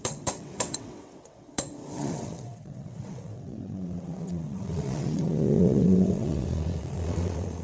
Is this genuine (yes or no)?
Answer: no